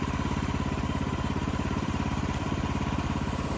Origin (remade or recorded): remade